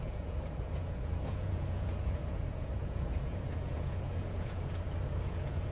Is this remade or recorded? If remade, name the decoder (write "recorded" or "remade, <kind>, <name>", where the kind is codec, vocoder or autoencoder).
remade, vocoder, Vocos